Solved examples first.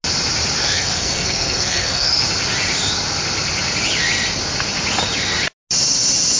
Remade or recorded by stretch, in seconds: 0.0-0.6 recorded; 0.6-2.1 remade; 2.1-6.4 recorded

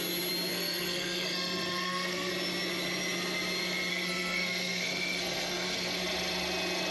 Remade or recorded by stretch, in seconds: 0.0-0.5 recorded; 0.5-2.3 remade; 2.3-3.9 recorded; 3.9-6.0 remade; 6.0-6.9 recorded

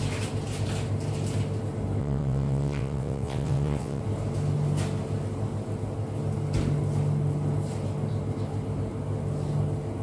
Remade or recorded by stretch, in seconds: 0.0-2.0 recorded; 2.0-4.0 remade; 4.0-10.0 recorded

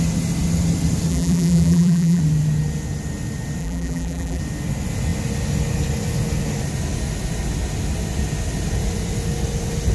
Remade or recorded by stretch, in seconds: 0.0-1.1 recorded; 1.1-2.2 remade; 2.2-3.6 recorded; 3.6-4.4 remade; 4.4-9.9 recorded

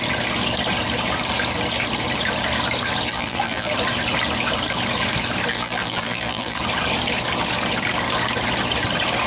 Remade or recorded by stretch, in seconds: 0.0-3.1 recorded; 3.1-3.7 remade; 3.7-5.5 recorded; 5.5-6.6 remade; 6.6-9.3 recorded

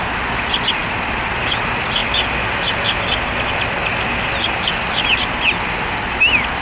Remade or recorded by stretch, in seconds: 0.0-6.6 recorded